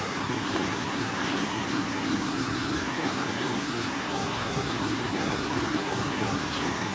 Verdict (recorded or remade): remade